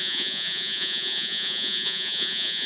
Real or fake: fake